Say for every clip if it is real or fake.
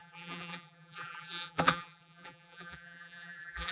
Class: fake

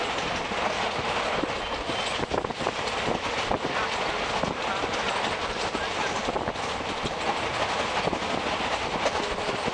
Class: real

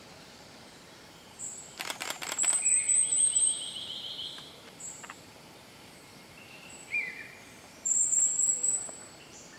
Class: fake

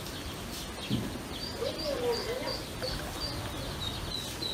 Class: real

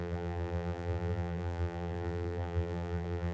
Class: fake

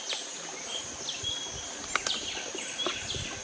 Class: real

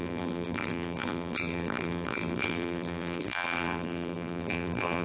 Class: fake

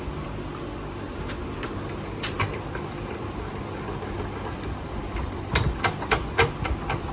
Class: fake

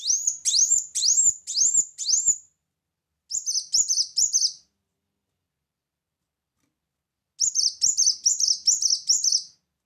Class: real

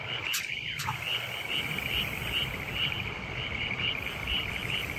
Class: fake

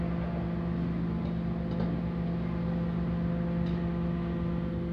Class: real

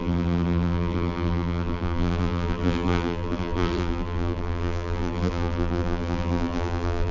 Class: fake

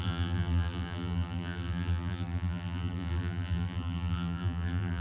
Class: fake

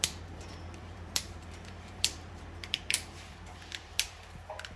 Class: fake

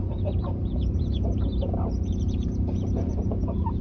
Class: fake